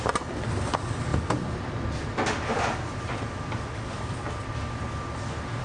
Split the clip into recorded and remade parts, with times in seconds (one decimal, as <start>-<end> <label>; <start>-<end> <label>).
0.0-1.1 recorded; 1.1-4.5 remade; 4.5-5.6 recorded

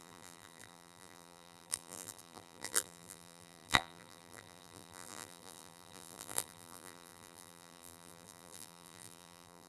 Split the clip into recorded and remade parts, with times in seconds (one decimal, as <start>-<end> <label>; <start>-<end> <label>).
0.0-9.7 remade

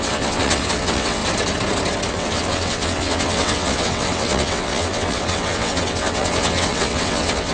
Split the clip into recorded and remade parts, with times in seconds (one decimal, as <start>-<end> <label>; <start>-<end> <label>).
0.0-1.2 remade; 1.2-2.1 recorded; 2.1-7.5 remade

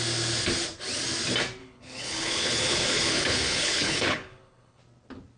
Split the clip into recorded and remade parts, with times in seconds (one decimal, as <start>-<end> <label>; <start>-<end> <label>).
0.0-1.6 recorded; 1.6-4.8 remade; 4.8-5.4 recorded

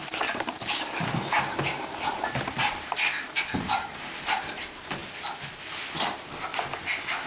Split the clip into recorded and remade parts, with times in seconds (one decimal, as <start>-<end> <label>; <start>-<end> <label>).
0.0-7.3 recorded

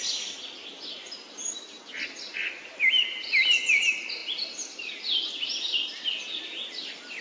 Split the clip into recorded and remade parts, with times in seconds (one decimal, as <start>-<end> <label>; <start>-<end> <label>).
0.0-7.2 recorded

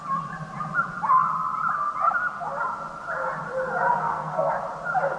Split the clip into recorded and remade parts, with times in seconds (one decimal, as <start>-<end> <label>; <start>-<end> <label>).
0.0-4.0 recorded; 4.0-4.5 remade; 4.5-5.2 recorded

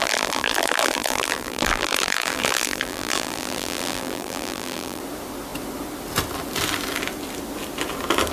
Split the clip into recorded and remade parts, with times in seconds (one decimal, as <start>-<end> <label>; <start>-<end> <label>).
0.0-5.0 remade; 5.0-8.3 recorded